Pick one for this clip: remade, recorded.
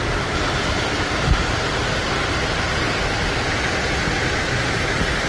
recorded